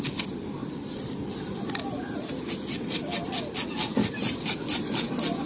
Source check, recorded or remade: recorded